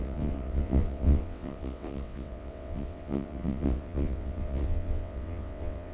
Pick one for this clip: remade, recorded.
remade